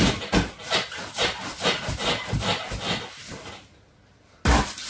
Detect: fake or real real